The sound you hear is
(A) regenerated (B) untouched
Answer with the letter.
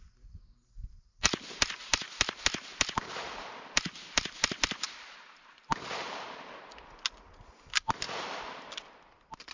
B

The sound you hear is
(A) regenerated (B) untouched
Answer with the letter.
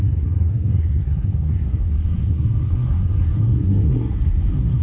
A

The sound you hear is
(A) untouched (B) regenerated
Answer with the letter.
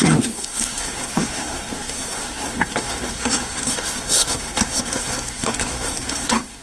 B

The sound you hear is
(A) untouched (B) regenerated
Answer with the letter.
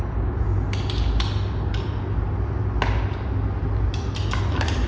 A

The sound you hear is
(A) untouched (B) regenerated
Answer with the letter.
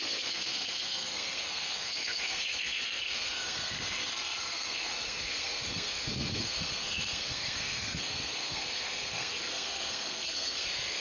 B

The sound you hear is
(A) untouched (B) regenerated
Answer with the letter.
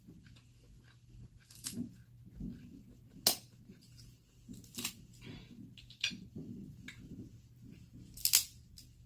A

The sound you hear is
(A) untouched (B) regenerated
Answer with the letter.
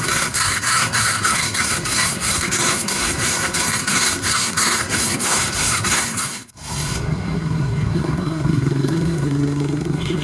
B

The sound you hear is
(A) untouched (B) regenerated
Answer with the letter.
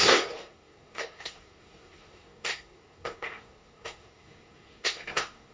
B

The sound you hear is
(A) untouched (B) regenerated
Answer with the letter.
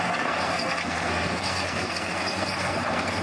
B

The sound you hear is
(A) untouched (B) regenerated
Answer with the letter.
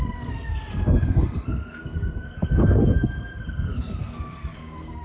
B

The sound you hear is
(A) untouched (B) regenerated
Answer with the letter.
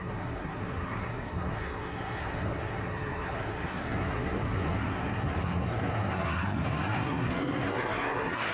B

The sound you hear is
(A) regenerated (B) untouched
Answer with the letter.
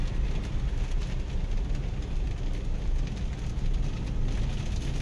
B